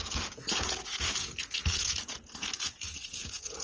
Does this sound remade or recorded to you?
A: remade